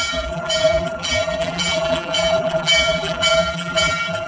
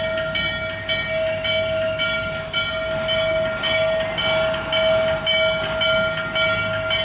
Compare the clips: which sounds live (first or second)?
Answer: second